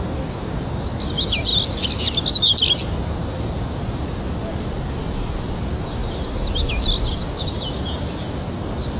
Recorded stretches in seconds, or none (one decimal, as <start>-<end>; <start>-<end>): 0.0-3.2; 5.6-9.0

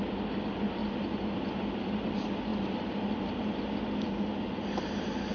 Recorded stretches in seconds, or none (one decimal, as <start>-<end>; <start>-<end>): 0.0-0.8; 2.1-5.3